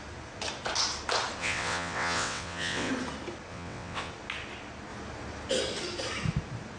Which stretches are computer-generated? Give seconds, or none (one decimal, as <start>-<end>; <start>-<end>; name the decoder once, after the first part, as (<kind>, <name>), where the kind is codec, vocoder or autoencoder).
1.4-2.9 (vocoder, WaveNeXt); 3.5-4.1